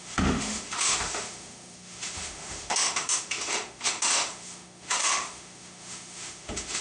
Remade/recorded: remade